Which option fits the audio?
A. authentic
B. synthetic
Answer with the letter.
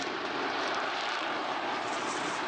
B